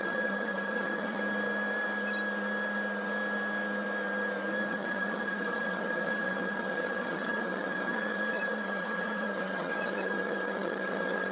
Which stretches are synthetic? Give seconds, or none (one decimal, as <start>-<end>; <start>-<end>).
0.0-1.2; 4.7-11.3